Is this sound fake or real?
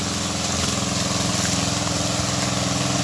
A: real